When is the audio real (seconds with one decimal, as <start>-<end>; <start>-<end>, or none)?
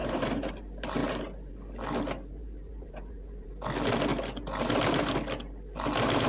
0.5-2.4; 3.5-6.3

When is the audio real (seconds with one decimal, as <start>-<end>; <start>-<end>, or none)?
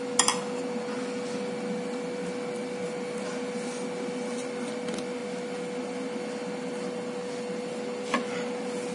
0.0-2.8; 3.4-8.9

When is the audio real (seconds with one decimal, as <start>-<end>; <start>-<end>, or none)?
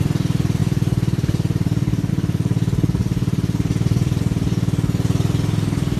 0.0-0.6; 2.1-3.0; 4.2-6.0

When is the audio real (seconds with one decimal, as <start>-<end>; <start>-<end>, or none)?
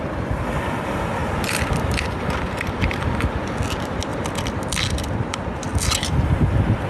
0.0-6.9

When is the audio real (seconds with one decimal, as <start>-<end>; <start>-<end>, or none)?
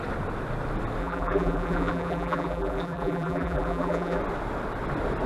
0.0-1.0; 4.2-5.3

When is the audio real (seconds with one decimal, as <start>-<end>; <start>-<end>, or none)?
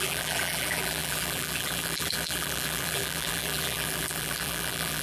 none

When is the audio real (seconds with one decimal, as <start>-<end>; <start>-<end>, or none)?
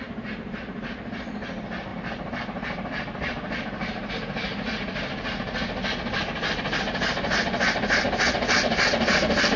0.0-1.9; 4.1-9.6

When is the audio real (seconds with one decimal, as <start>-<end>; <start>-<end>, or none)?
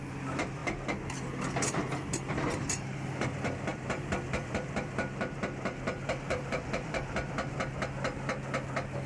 0.0-2.3; 3.1-3.7; 7.6-9.1